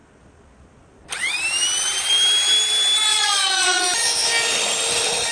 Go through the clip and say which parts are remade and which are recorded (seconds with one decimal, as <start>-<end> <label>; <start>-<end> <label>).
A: 0.0-3.1 recorded; 3.1-3.8 remade; 3.8-5.3 recorded